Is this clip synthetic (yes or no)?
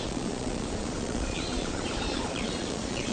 yes